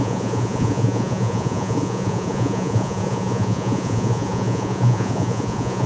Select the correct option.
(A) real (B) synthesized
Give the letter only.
B